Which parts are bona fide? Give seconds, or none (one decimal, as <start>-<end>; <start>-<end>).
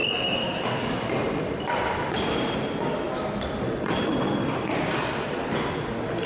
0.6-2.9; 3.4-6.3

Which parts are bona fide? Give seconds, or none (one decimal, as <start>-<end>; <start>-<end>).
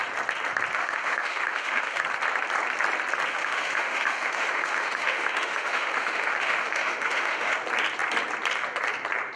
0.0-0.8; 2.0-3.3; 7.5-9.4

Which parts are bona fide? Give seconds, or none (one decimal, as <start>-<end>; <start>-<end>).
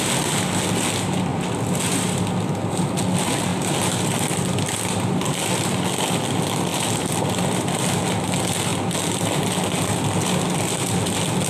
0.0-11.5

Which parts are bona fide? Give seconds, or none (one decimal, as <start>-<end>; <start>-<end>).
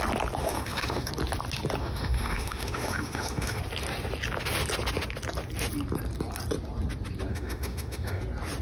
0.0-0.4; 1.1-1.8; 3.6-7.3; 8.2-8.6